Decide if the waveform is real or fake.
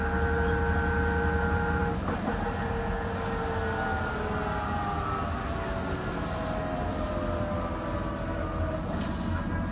real